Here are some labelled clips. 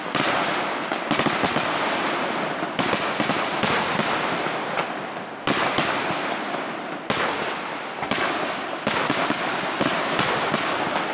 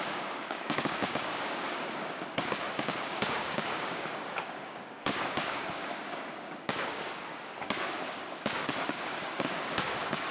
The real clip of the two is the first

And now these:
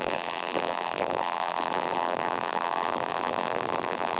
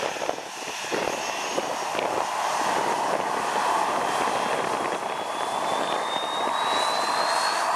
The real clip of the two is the second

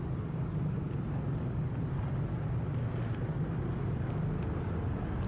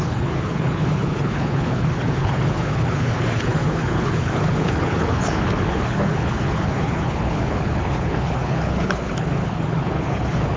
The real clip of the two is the first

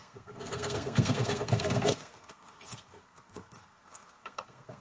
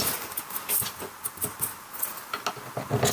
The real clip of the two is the second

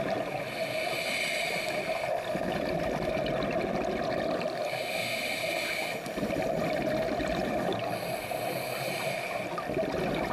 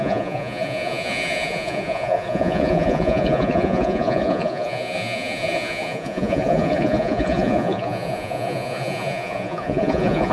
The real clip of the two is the first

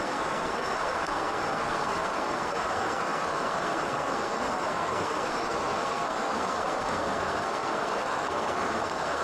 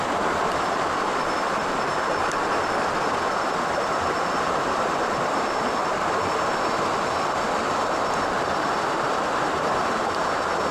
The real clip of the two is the second